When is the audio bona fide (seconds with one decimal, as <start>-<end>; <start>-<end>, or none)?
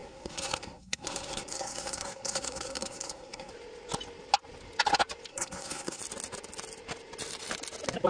3.5-5.3; 6.0-8.1